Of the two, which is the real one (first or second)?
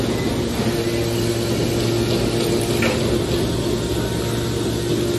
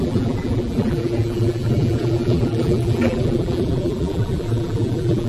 first